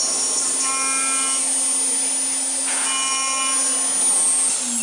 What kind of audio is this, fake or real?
real